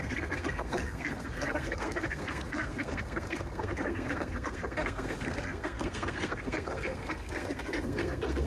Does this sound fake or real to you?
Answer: fake